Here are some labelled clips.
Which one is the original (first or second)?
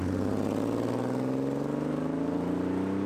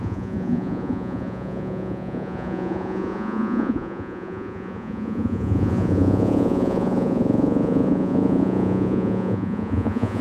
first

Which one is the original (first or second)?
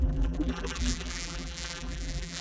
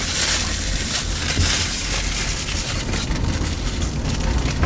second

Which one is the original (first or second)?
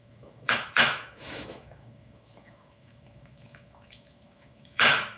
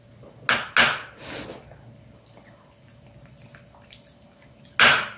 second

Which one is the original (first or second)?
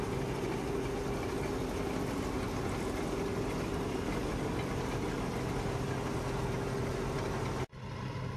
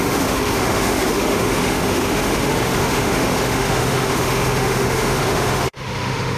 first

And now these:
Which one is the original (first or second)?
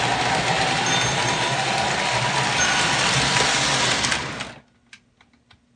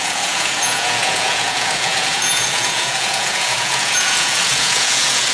first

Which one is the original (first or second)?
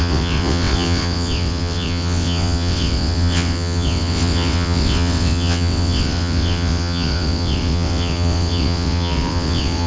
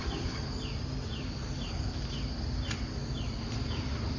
second